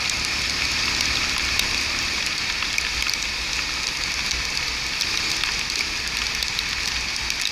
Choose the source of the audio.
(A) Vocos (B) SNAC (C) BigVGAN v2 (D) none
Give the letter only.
D